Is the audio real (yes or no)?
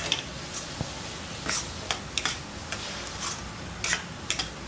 yes